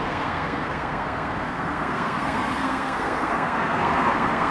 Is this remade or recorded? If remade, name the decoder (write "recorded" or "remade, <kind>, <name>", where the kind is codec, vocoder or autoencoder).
remade, codec, SNAC